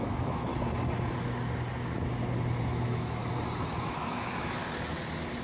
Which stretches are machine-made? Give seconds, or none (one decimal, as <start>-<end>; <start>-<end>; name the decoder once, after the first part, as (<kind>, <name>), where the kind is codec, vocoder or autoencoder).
0.0-0.5 (autoencoder, DAC-VAE); 2.6-3.2; 3.8-4.6

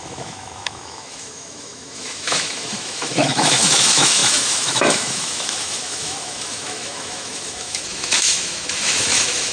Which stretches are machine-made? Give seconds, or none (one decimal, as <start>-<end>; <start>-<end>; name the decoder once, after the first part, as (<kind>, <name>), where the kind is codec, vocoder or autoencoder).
0.0-9.5 (autoencoder, DAC-VAE)

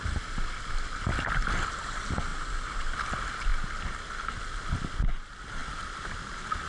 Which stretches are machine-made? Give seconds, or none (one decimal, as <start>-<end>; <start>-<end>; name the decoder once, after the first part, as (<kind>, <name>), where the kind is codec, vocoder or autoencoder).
none

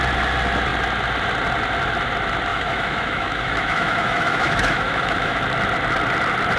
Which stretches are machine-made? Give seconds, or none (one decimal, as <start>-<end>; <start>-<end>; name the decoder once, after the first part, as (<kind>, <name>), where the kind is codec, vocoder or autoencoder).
2.5-5.4 (autoencoder, DAC-VAE)

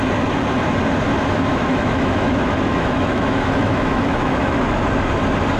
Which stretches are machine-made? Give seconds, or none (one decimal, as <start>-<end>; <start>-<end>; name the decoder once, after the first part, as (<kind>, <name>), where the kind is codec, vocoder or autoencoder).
1.5-4.9 (autoencoder, DAC-VAE)

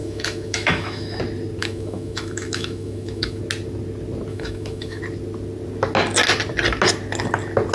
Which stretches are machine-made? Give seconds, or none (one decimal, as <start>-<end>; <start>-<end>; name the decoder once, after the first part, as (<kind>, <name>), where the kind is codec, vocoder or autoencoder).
0.0-1.2 (autoencoder, DAC-VAE); 1.6-3.4; 4.3-5.0